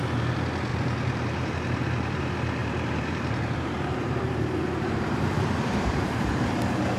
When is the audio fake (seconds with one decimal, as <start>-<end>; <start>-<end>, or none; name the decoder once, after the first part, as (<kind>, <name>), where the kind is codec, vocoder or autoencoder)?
0.7-2.2 (vocoder, BigVGAN v2); 2.6-6.5